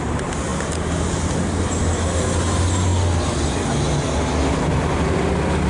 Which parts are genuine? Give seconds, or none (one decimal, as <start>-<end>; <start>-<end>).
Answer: 0.0-5.7